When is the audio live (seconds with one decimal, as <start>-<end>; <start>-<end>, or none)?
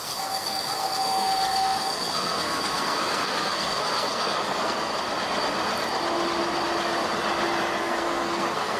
4.9-7.8